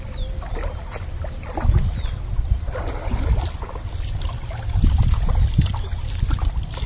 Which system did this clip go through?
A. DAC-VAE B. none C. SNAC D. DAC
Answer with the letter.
B